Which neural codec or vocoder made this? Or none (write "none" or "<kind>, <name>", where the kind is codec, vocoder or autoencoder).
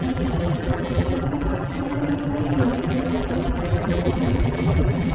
vocoder, BigVGAN v2